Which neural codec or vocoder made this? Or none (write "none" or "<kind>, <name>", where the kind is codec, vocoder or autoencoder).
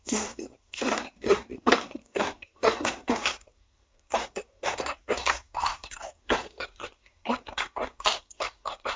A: codec, SNAC